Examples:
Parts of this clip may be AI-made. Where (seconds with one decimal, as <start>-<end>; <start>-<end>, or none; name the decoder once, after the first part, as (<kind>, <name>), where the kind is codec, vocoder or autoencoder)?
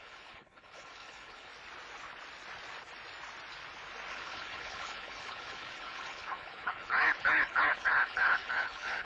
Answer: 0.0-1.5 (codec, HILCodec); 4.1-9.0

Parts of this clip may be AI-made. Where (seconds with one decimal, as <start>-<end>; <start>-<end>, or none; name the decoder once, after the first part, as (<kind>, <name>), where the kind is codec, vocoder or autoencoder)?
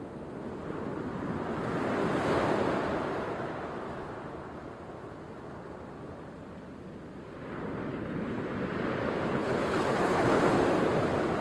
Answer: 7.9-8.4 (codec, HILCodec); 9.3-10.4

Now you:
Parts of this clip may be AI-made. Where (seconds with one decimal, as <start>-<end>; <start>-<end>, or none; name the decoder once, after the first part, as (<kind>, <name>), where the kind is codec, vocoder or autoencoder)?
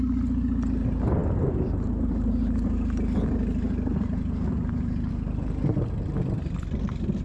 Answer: none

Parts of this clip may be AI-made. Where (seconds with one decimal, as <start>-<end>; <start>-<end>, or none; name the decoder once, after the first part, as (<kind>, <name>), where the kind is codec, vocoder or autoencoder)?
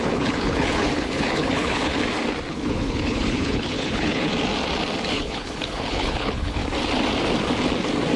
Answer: 0.0-1.9 (codec, HILCodec); 2.5-4.3; 5.1-6.6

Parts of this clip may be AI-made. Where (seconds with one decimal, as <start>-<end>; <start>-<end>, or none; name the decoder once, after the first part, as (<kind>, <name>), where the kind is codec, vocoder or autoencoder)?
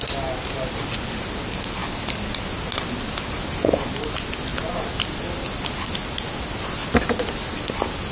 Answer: none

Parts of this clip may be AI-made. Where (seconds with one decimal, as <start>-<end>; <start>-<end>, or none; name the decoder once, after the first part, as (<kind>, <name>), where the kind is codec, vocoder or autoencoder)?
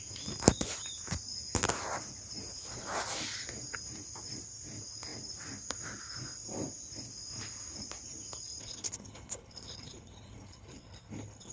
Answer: 8.6-11.5 (codec, HILCodec)